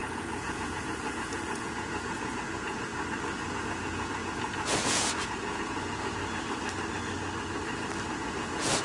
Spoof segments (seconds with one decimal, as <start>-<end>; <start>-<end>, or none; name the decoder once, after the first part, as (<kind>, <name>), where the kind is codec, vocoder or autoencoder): 0.0-2.9 (vocoder, Vocos); 3.5-6.2; 8.1-8.8